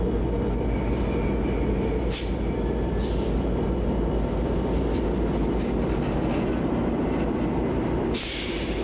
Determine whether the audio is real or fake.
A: real